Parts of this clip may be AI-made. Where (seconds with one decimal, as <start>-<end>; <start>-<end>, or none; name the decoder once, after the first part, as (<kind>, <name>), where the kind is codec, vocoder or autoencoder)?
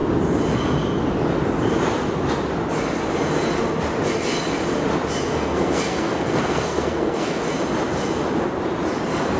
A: 5.3-7.4 (codec, SNAC)